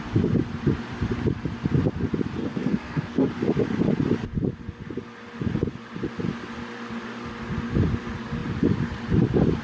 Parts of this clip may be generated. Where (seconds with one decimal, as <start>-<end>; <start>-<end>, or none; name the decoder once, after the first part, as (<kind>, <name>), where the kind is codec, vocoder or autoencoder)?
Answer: 2.4-3.3 (codec, SNAC)